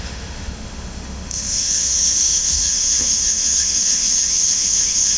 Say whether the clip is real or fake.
fake